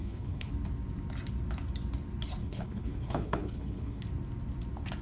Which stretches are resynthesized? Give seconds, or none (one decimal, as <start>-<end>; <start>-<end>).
0.0-0.5; 2.4-4.0